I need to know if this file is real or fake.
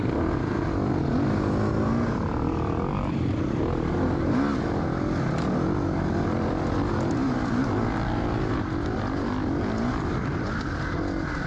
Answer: real